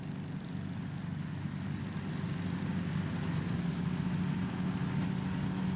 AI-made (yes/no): no